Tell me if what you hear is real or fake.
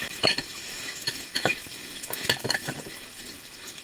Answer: fake